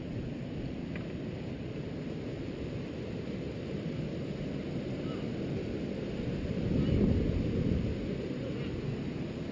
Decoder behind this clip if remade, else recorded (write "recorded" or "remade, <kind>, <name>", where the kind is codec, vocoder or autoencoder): recorded